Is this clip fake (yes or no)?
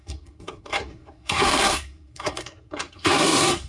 yes